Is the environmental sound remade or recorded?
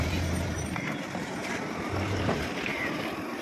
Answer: remade